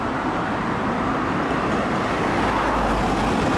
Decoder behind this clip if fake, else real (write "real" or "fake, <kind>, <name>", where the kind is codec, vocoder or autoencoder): real